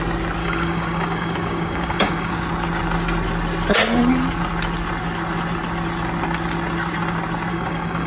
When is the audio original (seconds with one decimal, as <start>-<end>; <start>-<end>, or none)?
0.0-0.4; 2.3-7.5